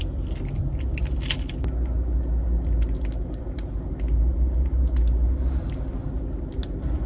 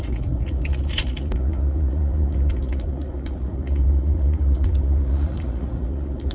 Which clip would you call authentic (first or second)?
first